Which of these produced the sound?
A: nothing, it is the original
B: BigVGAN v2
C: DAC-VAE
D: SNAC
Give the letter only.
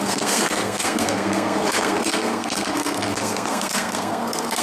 D